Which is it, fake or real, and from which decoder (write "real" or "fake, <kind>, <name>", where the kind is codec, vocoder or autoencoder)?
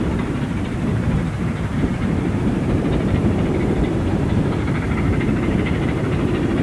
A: fake, vocoder, BigVGAN v2